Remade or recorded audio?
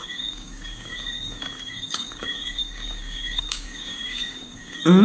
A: remade